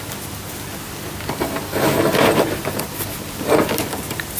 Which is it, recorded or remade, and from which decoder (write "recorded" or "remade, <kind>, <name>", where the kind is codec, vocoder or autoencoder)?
recorded